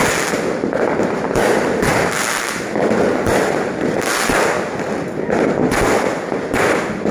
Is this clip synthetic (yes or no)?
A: no